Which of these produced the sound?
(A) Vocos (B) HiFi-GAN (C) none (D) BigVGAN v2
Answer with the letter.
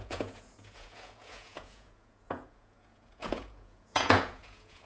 A